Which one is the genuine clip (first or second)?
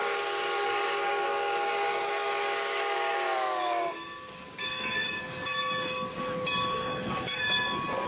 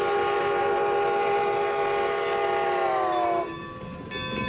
second